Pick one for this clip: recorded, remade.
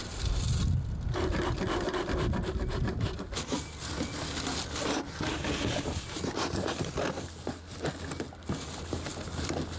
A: recorded